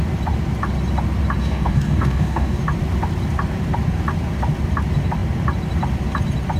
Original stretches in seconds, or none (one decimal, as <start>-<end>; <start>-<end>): 0.0-1.4; 2.6-6.6